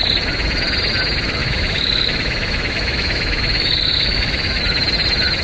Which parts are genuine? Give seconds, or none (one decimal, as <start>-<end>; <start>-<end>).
0.0-1.4; 4.6-5.4